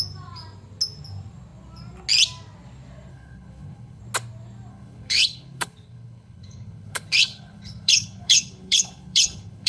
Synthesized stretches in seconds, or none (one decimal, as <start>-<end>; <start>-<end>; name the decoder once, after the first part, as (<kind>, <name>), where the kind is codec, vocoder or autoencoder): 3.1-4.0 (codec, HILCodec); 4.7-9.7